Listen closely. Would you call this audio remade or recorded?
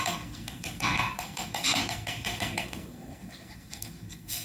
remade